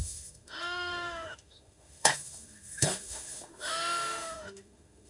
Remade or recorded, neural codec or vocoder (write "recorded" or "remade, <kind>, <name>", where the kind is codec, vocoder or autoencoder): remade, autoencoder, DAC-VAE